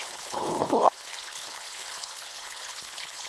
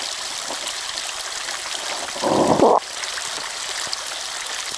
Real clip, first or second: second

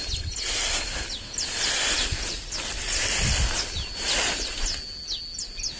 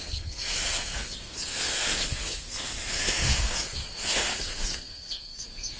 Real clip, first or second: first